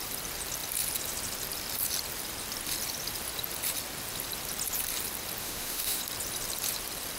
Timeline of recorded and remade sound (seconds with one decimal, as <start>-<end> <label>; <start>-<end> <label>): 0.0-5.4 recorded; 5.4-6.0 remade; 6.0-7.2 recorded